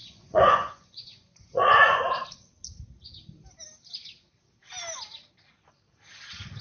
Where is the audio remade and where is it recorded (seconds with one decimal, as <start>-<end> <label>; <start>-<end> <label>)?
0.0-2.1 remade; 2.1-6.6 recorded